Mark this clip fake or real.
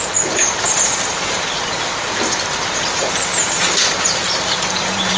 fake